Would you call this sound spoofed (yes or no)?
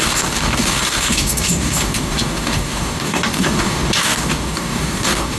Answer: yes